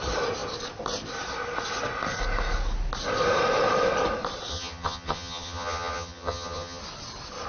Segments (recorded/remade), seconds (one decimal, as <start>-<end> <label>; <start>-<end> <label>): 0.0-4.5 recorded; 4.5-6.8 remade; 6.8-7.5 recorded